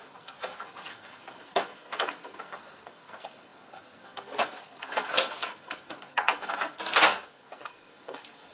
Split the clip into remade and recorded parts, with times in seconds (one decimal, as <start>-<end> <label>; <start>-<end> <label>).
0.0-8.5 remade